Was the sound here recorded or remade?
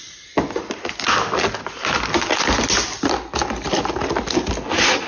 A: recorded